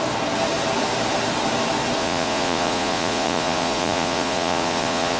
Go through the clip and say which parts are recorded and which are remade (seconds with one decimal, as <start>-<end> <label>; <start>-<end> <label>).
0.0-2.0 recorded; 2.0-5.2 remade